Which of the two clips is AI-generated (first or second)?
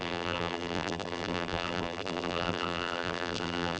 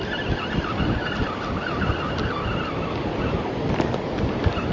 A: first